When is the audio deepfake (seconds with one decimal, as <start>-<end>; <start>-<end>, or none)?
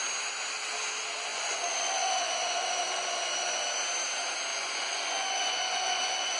1.3-3.6; 4.5-6.4